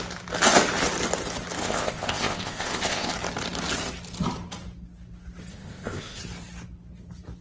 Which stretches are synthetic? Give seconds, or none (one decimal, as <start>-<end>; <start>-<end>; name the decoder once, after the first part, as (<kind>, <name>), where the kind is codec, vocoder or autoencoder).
1.6-3.1 (codec, ZipCodec); 5.5-6.2